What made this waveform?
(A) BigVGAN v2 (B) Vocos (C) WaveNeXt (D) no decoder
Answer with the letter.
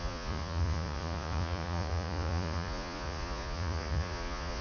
B